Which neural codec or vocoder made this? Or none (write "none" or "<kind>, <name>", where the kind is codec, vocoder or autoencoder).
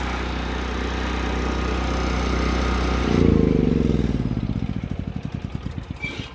none